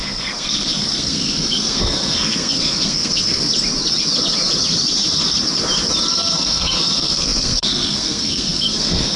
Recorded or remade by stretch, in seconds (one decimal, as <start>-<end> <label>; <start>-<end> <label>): 0.0-3.5 remade; 3.5-6.1 recorded; 6.1-9.2 remade